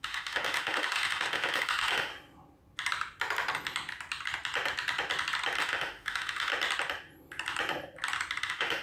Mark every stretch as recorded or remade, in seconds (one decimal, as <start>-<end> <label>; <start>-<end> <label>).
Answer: 0.0-2.1 remade; 2.1-5.6 recorded; 5.6-6.5 remade; 6.5-8.4 recorded; 8.4-8.8 remade